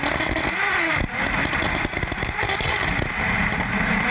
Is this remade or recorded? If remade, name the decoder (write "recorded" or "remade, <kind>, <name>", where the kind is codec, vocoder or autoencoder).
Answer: recorded